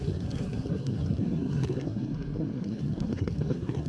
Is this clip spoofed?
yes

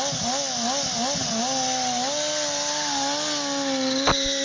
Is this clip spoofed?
no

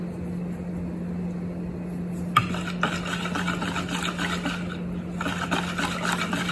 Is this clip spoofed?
no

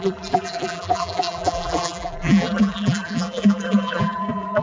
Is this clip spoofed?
yes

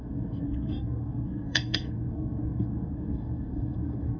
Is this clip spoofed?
yes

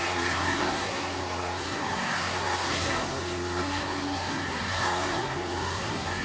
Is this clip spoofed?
yes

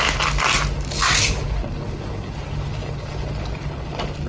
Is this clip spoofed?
no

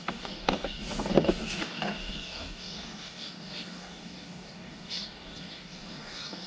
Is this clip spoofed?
yes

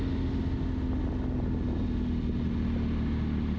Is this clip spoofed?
no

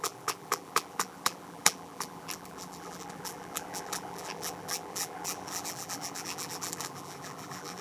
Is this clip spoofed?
yes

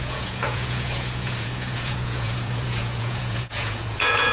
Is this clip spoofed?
yes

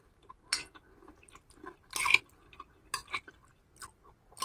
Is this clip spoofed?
no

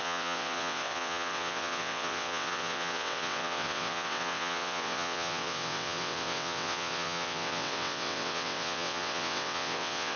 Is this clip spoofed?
yes